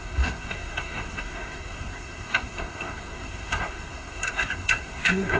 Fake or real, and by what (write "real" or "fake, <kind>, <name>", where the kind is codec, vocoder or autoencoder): fake, codec, SNAC